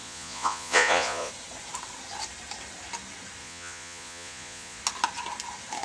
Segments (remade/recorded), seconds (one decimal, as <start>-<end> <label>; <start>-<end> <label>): 0.0-1.3 remade; 1.3-3.4 recorded; 3.4-4.8 remade; 4.8-5.8 recorded